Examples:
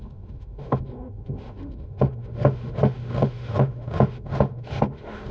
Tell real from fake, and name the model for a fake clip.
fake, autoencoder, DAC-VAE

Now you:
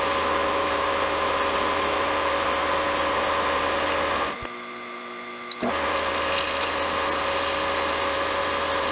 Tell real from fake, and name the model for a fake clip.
real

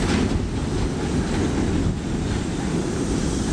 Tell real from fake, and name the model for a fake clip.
real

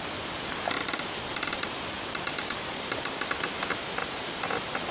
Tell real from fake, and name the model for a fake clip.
real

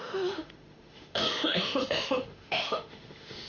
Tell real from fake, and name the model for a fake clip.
fake, autoencoder, DAC-VAE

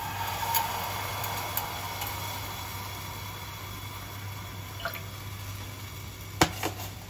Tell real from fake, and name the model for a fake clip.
real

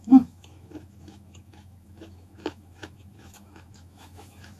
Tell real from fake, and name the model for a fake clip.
fake, autoencoder, DAC-VAE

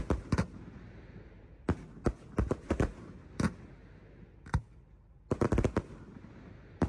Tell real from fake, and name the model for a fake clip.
real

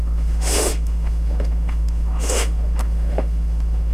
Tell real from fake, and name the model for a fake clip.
fake, autoencoder, DAC-VAE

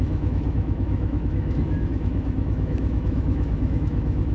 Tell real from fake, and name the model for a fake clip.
fake, autoencoder, DAC-VAE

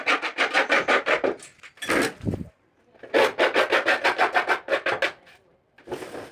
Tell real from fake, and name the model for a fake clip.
real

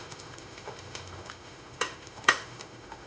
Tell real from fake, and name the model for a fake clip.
fake, autoencoder, DAC-VAE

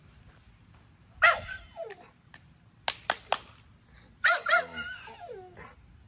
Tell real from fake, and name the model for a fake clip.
real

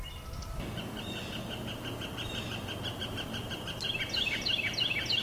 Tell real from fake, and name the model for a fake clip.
real